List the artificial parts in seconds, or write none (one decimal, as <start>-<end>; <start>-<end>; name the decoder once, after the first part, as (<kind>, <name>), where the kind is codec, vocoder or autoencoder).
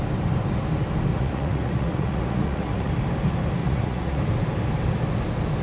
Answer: 1.1-2.9 (vocoder, Vocos); 3.6-4.2